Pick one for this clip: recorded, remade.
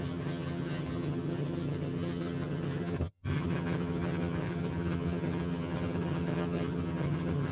remade